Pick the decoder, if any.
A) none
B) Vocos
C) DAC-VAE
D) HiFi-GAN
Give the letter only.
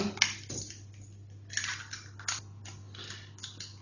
A